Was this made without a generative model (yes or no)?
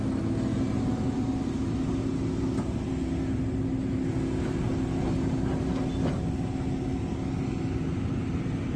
yes